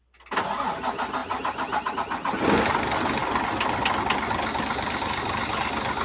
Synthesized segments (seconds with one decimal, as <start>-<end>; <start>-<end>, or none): none